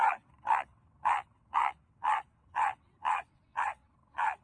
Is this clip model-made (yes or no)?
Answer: yes